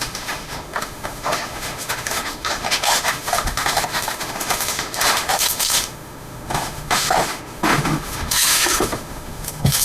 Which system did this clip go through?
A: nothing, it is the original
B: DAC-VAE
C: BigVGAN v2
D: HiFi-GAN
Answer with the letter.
B